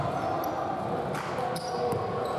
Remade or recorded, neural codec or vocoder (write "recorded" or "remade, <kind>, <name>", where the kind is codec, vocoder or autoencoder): recorded